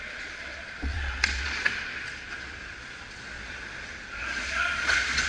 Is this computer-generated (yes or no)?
yes